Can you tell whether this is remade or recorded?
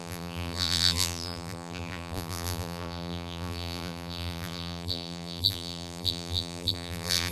remade